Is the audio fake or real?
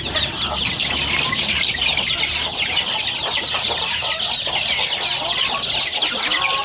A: real